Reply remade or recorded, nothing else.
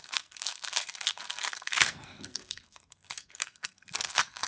remade